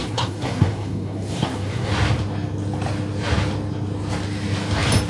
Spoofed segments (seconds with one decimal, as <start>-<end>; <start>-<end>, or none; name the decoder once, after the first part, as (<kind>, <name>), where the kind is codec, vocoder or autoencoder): 0.0-1.9 (codec, SNAC)